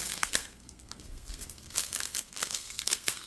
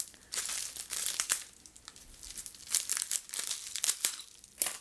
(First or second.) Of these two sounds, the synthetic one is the first